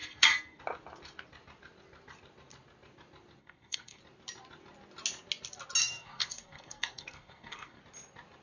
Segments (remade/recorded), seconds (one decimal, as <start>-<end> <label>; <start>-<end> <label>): 0.0-0.6 remade; 0.6-3.4 recorded; 3.4-4.0 remade; 4.0-5.8 recorded; 5.8-7.8 remade; 7.8-8.4 recorded